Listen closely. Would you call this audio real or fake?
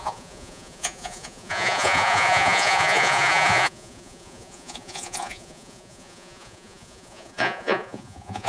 fake